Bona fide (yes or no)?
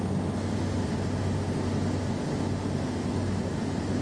yes